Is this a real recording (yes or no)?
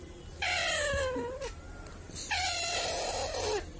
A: yes